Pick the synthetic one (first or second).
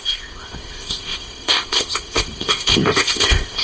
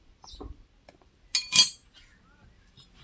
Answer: first